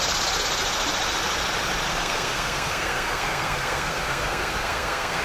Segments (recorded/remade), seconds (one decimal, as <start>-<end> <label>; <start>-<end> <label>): 0.0-1.9 recorded; 1.9-5.2 remade